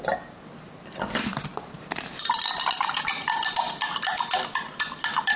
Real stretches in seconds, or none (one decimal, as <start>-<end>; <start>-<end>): 0.0-5.4